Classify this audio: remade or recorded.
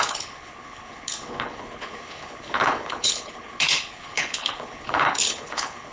remade